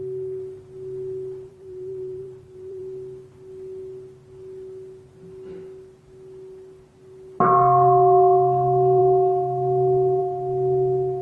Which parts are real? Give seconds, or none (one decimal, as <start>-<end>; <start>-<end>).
0.0-1.5; 2.8-11.2